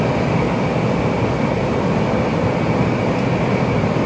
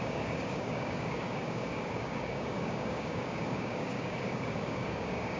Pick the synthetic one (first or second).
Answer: second